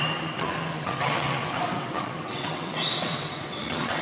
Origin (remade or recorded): remade